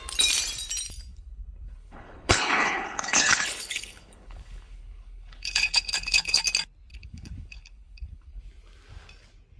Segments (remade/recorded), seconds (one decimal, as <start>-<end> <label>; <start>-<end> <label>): 0.0-1.1 recorded; 1.1-6.4 remade; 6.4-6.9 recorded; 6.9-8.4 remade; 8.4-9.6 recorded